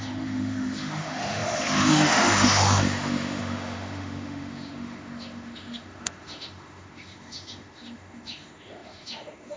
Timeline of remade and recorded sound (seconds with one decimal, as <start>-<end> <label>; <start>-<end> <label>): 0.0-9.6 remade